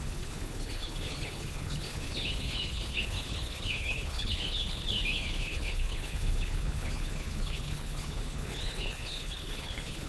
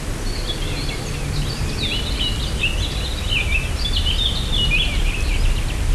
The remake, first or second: first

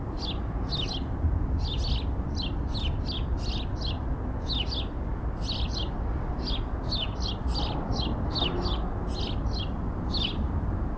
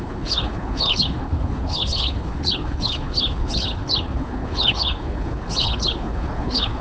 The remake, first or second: second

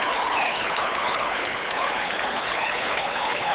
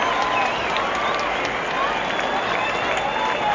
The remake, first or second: first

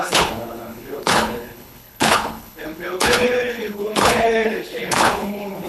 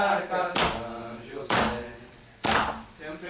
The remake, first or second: first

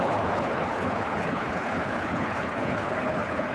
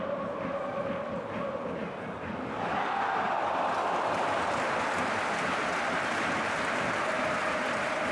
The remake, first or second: first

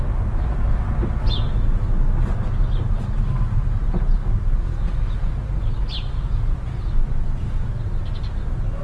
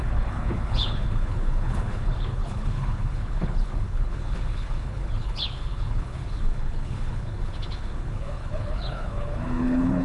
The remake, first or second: second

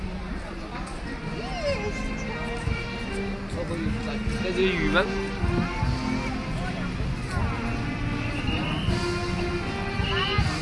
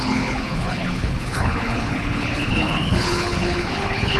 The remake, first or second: second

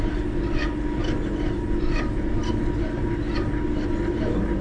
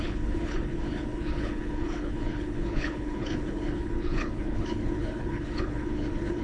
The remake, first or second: second